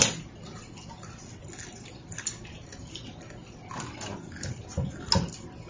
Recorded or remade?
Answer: recorded